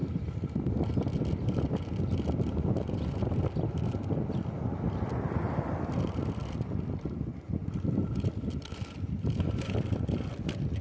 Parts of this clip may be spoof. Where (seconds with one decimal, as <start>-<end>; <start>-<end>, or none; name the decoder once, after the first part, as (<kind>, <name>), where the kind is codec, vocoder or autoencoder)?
none